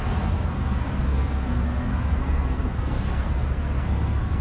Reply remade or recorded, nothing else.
remade